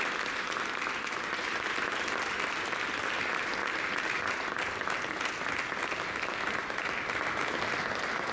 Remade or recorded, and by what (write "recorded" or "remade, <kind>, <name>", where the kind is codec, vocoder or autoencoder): recorded